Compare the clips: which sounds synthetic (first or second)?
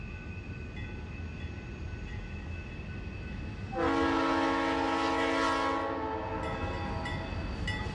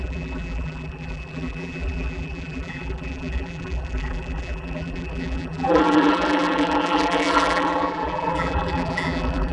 second